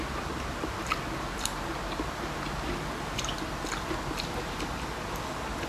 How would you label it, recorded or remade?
recorded